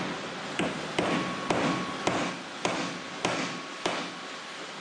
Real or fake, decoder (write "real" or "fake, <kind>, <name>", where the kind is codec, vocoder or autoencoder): real